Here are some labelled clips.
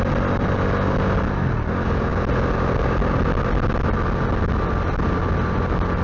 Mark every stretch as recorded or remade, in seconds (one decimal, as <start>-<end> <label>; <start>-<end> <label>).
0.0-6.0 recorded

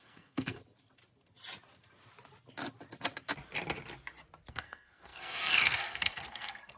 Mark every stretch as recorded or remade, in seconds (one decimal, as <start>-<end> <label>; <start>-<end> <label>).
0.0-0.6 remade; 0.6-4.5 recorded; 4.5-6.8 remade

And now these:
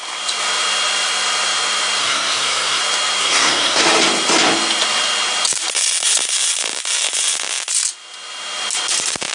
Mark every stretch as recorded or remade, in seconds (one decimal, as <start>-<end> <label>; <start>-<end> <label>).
0.0-2.0 recorded; 2.0-2.8 remade; 2.8-3.2 recorded; 3.2-3.8 remade; 3.8-9.3 recorded

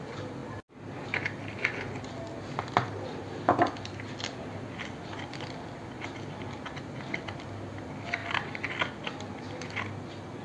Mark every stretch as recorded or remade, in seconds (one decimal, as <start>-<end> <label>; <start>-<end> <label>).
0.0-10.4 recorded

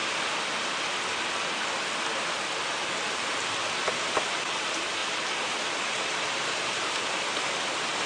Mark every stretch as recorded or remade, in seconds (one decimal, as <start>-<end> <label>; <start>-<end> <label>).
0.0-8.1 recorded

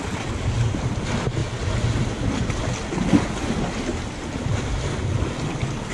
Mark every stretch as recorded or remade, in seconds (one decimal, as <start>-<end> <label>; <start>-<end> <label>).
0.0-5.9 recorded